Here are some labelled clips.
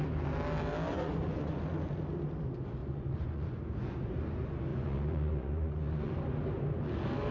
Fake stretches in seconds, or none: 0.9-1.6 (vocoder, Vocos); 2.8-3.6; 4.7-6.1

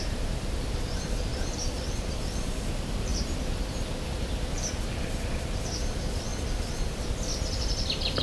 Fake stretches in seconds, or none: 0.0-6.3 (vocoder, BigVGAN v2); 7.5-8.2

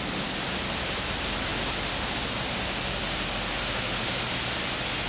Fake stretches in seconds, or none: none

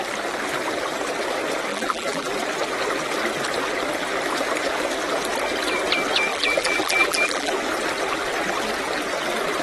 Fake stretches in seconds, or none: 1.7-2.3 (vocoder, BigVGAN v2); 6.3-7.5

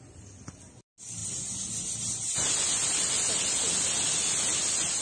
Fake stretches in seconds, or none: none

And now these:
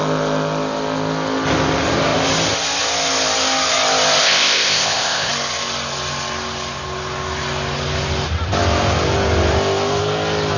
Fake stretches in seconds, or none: 4.2-5.3 (codec, ZipCodec)

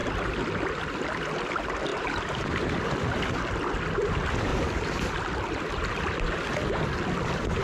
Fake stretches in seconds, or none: 1.9-2.8 (vocoder, BigVGAN v2)

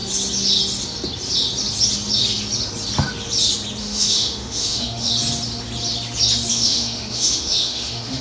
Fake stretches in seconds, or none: 3.8-5.1 (autoencoder, DAC-VAE); 6.5-8.2